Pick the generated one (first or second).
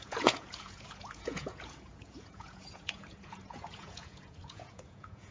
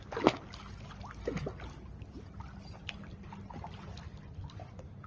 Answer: first